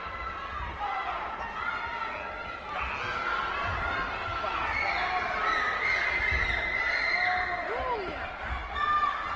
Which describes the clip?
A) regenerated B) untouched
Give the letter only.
B